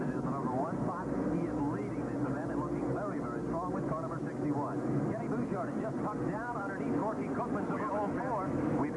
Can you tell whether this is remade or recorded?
recorded